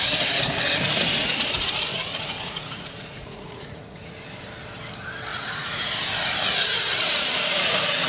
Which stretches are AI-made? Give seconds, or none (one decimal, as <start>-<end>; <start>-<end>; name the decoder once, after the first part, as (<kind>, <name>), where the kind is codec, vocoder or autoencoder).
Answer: 1.9-4.1 (vocoder, Vocos); 5.3-5.9